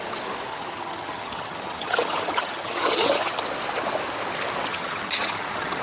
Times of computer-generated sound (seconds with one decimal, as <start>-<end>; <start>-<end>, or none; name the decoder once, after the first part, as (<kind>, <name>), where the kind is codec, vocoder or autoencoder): 0.5-3.4 (vocoder, HiFi-GAN); 4.7-5.8